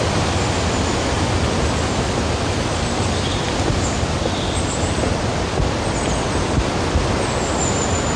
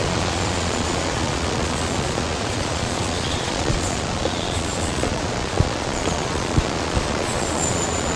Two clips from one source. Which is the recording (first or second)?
first